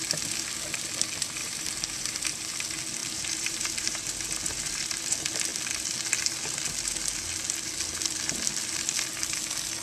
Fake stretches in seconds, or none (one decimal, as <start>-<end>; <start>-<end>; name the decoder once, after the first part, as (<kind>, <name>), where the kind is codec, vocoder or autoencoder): 1.4-2.5 (vocoder, BigVGAN v2); 3.0-4.0